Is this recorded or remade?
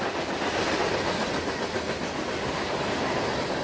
recorded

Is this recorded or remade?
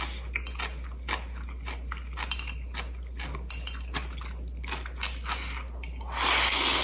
recorded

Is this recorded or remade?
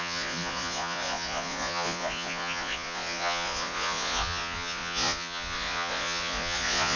remade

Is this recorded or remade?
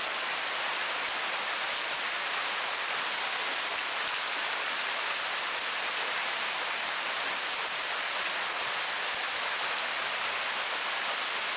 recorded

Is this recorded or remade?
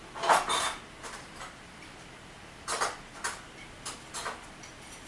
recorded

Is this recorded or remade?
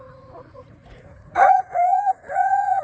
remade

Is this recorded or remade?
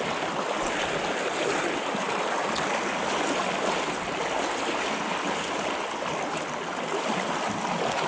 recorded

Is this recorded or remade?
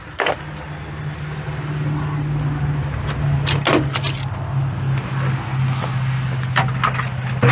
recorded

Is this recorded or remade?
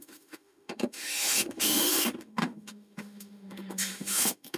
remade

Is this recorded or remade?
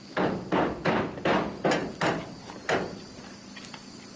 recorded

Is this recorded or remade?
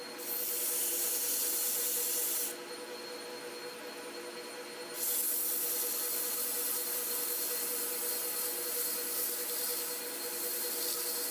recorded